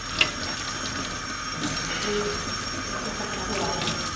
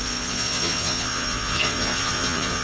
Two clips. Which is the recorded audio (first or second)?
first